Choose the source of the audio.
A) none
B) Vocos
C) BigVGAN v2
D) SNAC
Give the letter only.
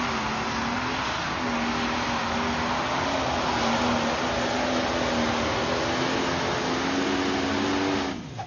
A